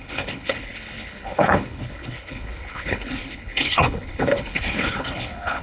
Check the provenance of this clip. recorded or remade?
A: remade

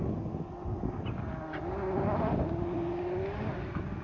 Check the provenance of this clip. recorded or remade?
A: recorded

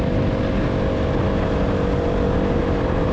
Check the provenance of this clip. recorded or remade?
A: recorded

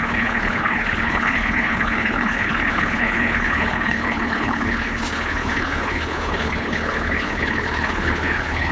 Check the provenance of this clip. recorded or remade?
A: remade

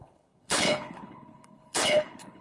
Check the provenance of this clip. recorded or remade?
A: remade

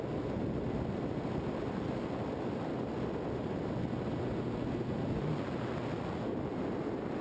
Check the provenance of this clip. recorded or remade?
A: recorded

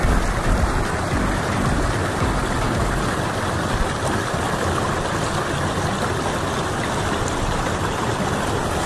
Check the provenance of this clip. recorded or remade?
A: recorded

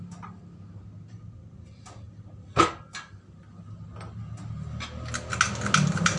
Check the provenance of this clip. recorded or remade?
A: recorded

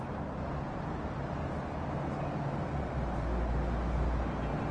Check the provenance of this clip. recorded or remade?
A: recorded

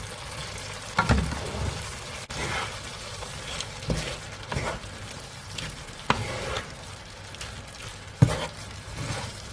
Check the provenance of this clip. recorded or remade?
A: recorded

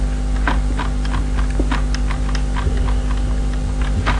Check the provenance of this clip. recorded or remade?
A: recorded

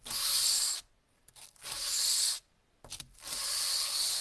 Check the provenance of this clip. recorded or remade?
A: recorded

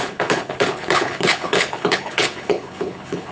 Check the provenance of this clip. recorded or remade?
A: remade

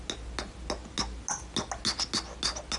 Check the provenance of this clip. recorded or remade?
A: recorded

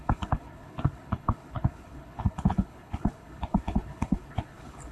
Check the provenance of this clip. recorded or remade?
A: remade